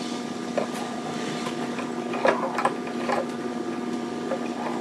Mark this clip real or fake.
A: real